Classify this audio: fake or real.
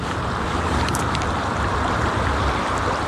real